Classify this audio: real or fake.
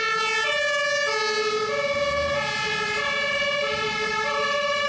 real